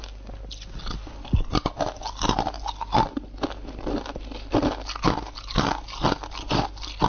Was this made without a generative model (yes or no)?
yes